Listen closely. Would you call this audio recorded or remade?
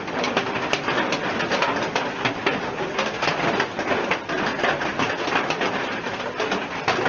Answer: recorded